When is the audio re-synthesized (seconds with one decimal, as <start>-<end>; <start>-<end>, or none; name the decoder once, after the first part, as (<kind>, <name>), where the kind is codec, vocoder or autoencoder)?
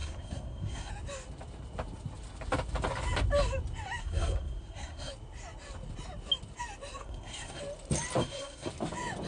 0.0-0.9 (codec, SNAC); 4.0-5.1; 7.0-7.6; 8.2-8.7